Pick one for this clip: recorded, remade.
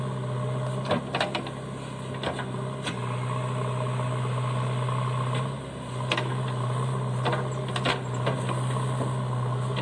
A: recorded